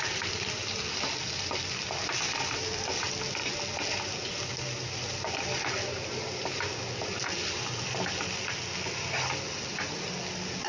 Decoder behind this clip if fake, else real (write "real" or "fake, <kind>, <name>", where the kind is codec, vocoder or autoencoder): real